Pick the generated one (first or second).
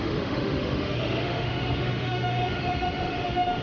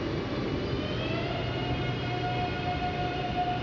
first